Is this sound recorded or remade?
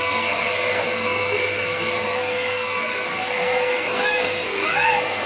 remade